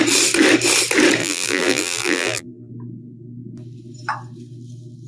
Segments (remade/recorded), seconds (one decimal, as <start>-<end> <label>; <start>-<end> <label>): 0.0-1.2 recorded; 1.2-2.7 remade; 2.7-5.1 recorded